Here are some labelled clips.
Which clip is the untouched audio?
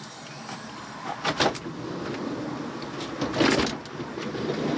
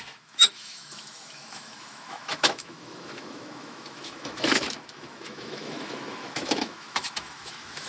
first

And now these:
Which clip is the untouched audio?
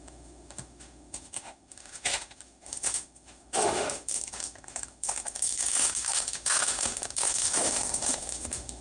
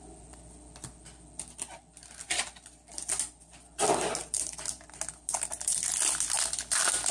second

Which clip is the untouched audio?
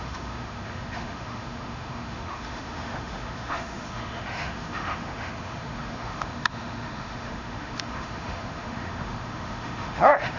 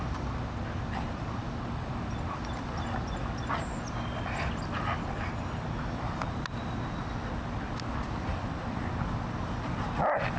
second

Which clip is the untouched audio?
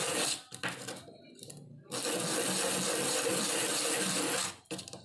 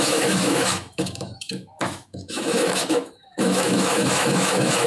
first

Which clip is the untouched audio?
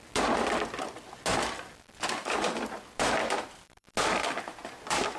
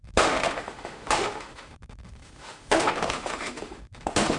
first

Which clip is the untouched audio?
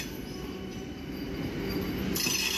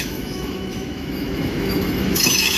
first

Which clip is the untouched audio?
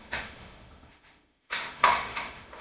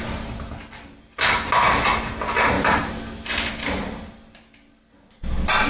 second